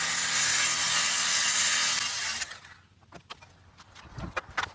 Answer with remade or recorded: recorded